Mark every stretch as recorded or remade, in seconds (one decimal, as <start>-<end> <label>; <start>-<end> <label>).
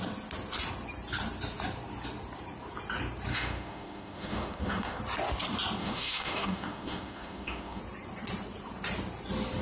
0.0-3.3 recorded; 3.3-5.0 remade; 5.0-5.8 recorded; 5.8-7.8 remade; 7.8-9.6 recorded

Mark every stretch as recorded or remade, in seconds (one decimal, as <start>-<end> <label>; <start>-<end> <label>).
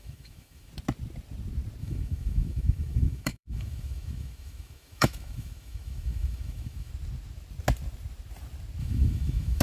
0.0-0.7 remade; 0.7-1.8 recorded; 1.8-6.9 remade; 6.9-8.8 recorded; 8.8-9.6 remade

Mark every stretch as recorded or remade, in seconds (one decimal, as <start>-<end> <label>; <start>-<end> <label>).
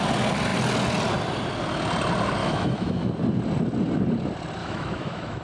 0.0-2.4 recorded; 2.4-3.1 remade; 3.1-4.6 recorded; 4.6-5.4 remade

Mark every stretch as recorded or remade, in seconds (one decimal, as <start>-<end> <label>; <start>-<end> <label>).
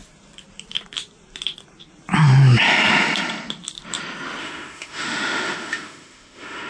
0.0-4.4 recorded; 4.4-6.7 remade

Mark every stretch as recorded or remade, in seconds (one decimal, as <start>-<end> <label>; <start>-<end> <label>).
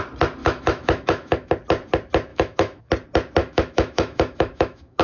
0.0-0.4 recorded; 0.4-1.5 remade; 1.5-2.3 recorded; 2.3-2.9 remade; 2.9-3.4 recorded; 3.4-5.0 remade